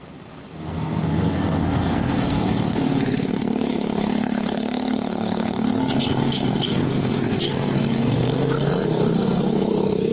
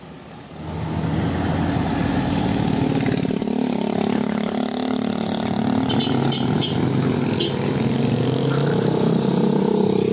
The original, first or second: second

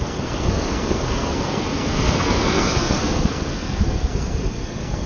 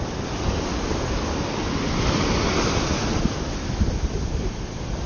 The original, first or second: second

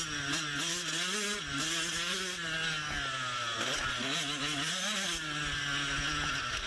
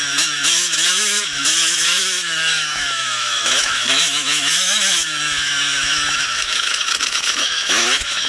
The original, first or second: first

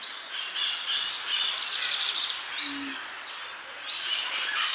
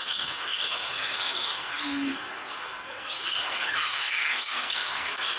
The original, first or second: first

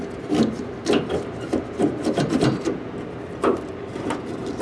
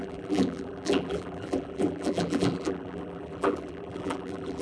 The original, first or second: first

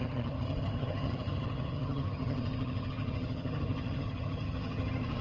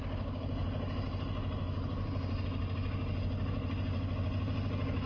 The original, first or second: second